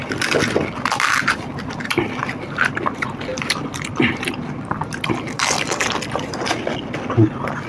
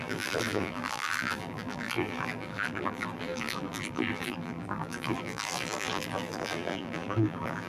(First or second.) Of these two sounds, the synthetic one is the second